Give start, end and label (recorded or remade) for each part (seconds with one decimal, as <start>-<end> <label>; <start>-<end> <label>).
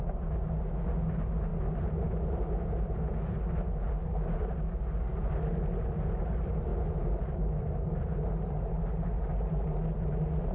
0.0-10.5 recorded